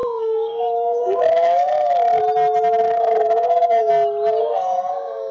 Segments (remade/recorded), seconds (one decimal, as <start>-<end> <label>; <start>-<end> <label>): 0.0-2.2 remade; 2.2-2.8 recorded; 2.8-3.9 remade; 3.9-4.4 recorded; 4.4-5.3 remade